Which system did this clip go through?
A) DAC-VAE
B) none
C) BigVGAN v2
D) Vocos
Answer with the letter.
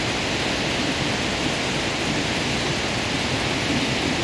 B